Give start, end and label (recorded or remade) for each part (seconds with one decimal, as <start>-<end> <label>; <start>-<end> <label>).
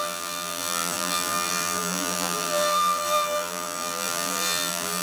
0.0-5.0 remade